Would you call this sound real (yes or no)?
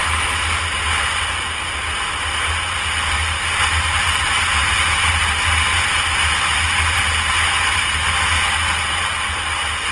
yes